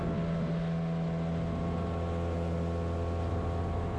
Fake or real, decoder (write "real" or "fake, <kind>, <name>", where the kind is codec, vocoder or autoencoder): real